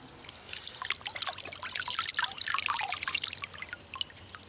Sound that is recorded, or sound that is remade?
recorded